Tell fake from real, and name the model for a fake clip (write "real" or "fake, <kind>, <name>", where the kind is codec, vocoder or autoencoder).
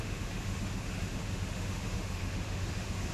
fake, autoencoder, DAC-VAE